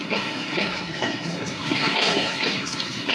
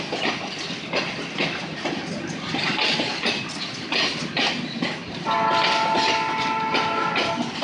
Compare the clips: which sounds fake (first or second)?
first